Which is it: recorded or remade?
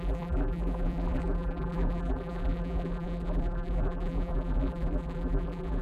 remade